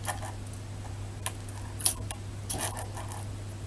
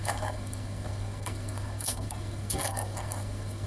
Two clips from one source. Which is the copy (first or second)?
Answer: second